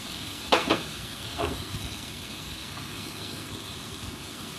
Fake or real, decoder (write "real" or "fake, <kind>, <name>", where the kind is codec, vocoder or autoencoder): fake, codec, SNAC